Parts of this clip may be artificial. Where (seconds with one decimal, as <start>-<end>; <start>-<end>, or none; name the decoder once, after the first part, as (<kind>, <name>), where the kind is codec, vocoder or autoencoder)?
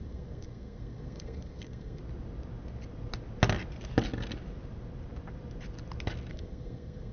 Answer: 0.0-2.0 (codec, SNAC); 6.3-7.1